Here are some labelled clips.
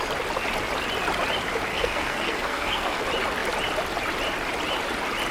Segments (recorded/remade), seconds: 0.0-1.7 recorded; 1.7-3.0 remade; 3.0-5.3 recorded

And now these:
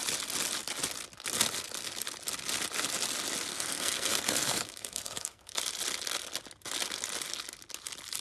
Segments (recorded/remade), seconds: 0.0-3.5 recorded; 3.5-5.6 remade; 5.6-8.2 recorded